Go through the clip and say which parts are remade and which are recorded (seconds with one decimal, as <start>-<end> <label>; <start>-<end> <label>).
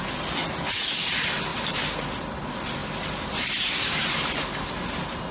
0.0-1.5 recorded; 1.5-2.1 remade; 2.1-2.8 recorded; 2.8-5.3 remade